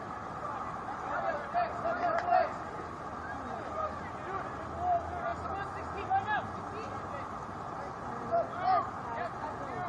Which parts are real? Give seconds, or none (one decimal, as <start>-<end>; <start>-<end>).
0.0-9.9